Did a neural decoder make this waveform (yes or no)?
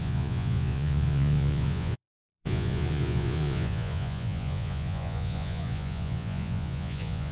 yes